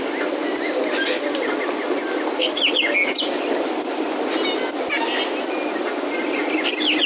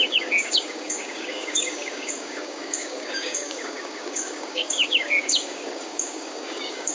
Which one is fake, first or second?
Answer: second